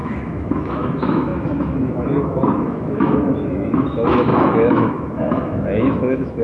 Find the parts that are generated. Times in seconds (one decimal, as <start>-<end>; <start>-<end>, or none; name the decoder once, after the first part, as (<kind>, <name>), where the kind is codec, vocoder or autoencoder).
0.0-6.4 (autoencoder, DAC-VAE)